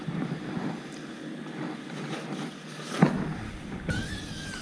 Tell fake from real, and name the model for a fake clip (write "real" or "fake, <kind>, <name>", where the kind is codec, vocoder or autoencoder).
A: real